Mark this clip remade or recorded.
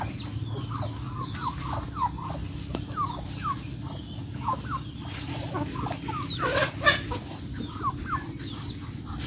recorded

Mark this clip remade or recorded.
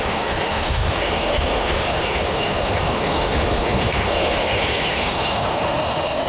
remade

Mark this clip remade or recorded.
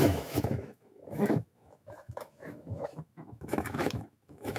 remade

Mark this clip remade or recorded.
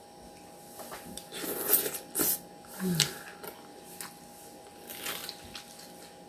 recorded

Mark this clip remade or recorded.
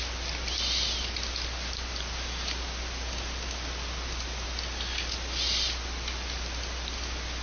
recorded